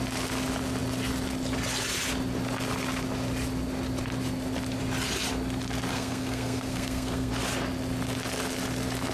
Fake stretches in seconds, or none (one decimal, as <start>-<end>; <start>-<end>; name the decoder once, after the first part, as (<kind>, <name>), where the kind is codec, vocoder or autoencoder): 5.9-7.3 (codec, SNAC)